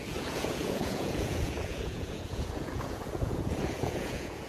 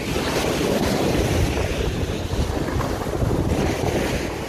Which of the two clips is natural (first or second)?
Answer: second